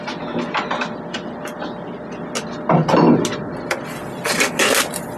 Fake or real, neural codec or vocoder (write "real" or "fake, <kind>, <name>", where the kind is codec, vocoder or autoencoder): real